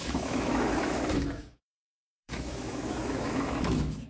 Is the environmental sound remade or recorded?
remade